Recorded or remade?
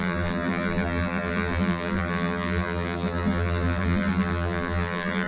remade